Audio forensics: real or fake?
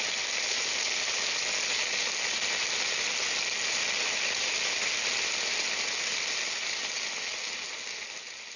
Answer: real